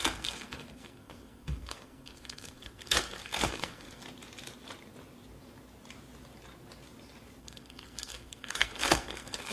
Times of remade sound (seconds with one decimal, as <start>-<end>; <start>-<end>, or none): 0.0-4.0; 7.4-9.5